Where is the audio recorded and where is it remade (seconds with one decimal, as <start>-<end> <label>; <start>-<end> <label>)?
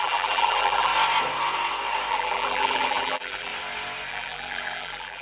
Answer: 0.0-0.9 remade; 0.9-2.1 recorded; 2.1-3.5 remade; 3.5-4.1 recorded; 4.1-5.2 remade